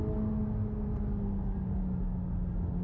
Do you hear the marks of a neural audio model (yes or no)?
no